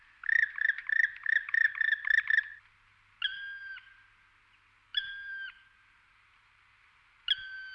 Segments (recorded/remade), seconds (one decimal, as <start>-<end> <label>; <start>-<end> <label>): 0.0-4.9 recorded; 4.9-7.0 remade; 7.0-7.7 recorded